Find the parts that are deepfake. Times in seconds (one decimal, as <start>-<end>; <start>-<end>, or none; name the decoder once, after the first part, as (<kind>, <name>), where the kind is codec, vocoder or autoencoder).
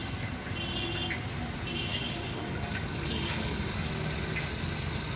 1.9-3.9 (codec, DAC)